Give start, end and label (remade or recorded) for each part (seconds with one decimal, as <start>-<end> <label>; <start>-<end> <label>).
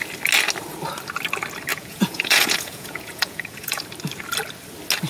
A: 0.0-1.7 recorded; 1.7-3.8 remade; 3.8-5.1 recorded